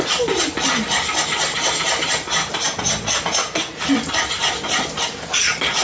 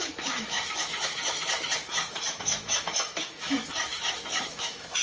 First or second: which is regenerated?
second